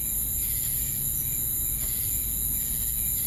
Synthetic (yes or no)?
no